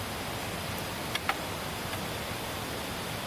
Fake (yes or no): no